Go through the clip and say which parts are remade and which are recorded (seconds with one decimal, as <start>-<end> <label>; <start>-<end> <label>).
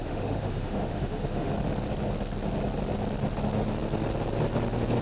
0.0-1.5 remade; 1.5-5.0 recorded